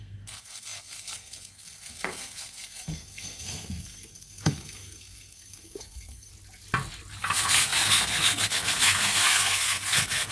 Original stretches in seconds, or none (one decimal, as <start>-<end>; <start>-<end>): 6.3-7.2